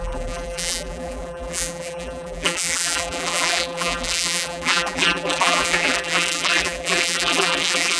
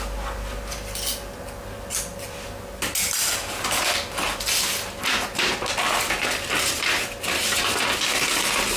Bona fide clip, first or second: second